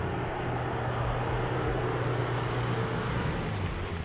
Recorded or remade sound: recorded